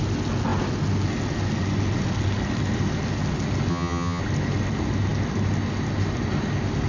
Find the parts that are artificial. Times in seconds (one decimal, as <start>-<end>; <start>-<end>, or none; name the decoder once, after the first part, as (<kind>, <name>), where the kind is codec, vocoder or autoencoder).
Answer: 3.7-4.2 (vocoder, HiFi-GAN)